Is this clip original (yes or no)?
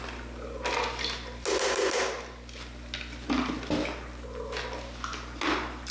yes